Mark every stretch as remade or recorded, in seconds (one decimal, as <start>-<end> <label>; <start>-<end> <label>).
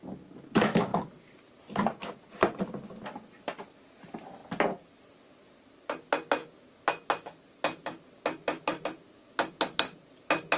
0.0-0.9 recorded; 0.9-2.0 remade; 2.0-4.4 recorded; 4.4-5.1 remade; 5.1-10.6 recorded